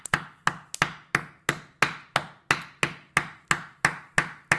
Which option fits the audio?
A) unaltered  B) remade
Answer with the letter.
A